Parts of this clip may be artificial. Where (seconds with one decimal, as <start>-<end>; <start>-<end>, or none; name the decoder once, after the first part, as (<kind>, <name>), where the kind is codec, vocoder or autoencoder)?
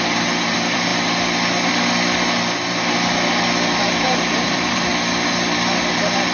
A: 0.0-0.9 (vocoder, BigVGAN v2); 3.8-4.9; 5.8-6.3